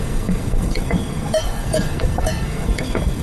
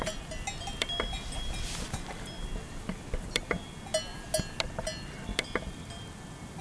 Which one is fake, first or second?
first